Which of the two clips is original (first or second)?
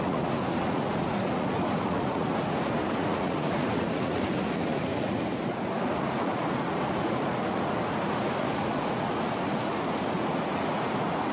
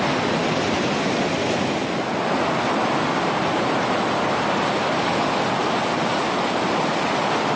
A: second